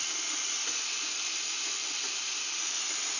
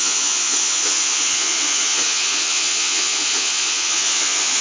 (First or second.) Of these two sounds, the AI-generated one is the second